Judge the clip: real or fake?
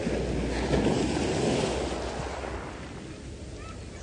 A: real